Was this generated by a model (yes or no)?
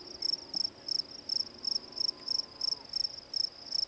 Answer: no